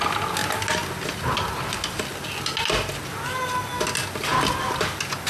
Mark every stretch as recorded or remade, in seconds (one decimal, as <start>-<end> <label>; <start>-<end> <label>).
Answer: 0.0-5.3 recorded